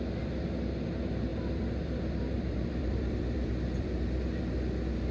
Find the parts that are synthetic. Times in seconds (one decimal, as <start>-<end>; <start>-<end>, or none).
1.3-4.4